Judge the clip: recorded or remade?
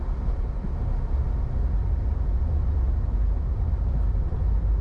recorded